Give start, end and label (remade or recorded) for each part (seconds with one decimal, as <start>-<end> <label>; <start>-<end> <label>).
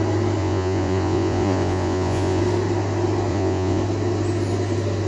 0.0-0.4 recorded; 0.4-2.4 remade; 2.4-3.3 recorded; 3.3-3.8 remade; 3.8-5.1 recorded